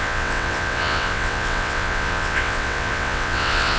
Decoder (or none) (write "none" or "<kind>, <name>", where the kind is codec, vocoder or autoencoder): vocoder, WaveNeXt